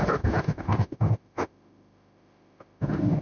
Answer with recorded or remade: remade